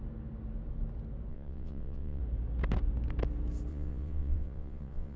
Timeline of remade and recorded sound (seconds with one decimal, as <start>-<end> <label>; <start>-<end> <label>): 0.0-1.3 recorded; 1.3-2.2 remade; 2.2-3.7 recorded; 3.7-5.2 remade